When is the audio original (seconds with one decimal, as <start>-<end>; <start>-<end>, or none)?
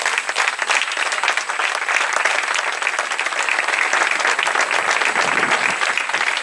0.0-6.4